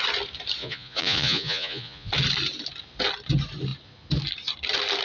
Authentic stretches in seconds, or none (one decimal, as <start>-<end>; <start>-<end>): 0.0-0.6; 2.1-5.0